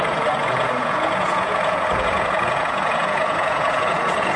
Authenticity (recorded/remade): remade